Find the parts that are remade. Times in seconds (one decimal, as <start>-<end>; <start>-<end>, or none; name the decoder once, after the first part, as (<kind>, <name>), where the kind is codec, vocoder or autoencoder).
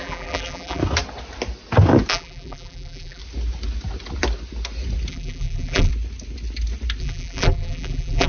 0.0-0.8 (vocoder, BigVGAN v2); 2.1-3.2; 5.1-5.9; 7.0-8.3